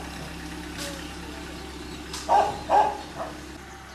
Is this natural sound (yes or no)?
yes